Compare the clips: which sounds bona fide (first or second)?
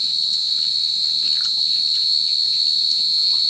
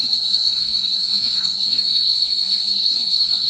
first